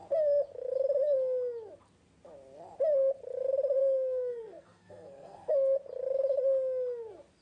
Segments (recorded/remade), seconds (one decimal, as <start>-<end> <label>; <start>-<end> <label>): 0.0-3.8 recorded; 3.8-5.5 remade; 5.5-7.4 recorded